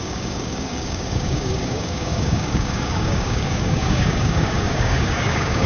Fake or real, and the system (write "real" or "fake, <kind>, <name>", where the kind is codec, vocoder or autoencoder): fake, codec, DAC